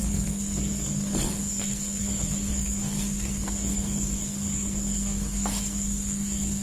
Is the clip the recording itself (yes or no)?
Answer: no